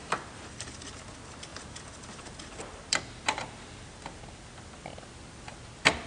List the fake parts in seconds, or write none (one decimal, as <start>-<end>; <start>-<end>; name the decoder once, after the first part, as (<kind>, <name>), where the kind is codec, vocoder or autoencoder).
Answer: 0.0-0.8 (vocoder, BigVGAN v2); 1.5-4.2